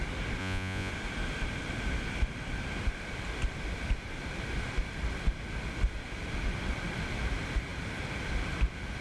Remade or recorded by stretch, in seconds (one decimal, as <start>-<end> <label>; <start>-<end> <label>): 0.0-0.4 recorded; 0.4-0.9 remade; 0.9-9.0 recorded